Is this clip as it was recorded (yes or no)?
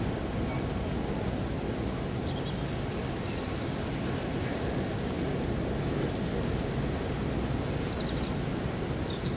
yes